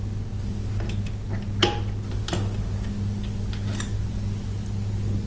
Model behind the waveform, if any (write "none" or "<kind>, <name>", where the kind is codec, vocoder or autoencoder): none